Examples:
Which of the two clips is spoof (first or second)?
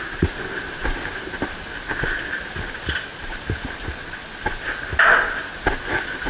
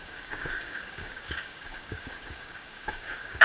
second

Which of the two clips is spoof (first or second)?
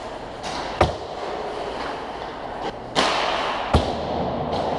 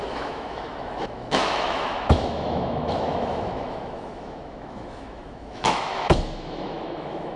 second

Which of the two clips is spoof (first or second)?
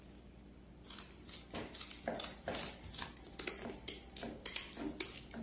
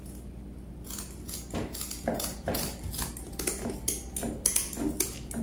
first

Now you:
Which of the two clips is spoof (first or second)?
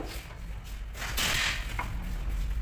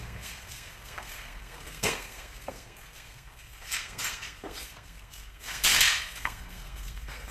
second